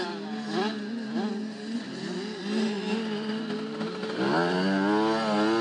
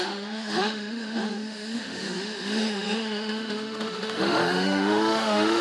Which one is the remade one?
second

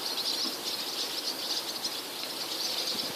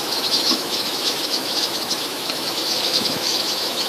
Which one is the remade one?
second